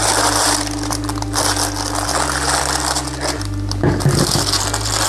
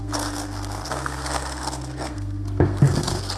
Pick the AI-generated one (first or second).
second